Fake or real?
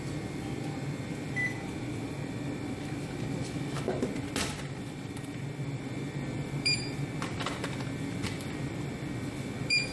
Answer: fake